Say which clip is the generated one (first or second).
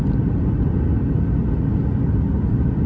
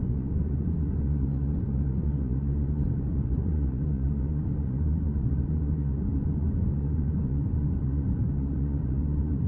second